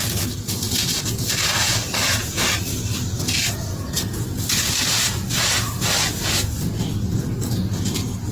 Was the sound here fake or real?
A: real